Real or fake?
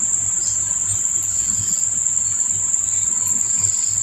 real